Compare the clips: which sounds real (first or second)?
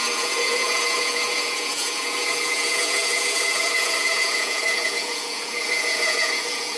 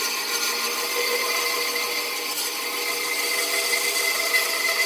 second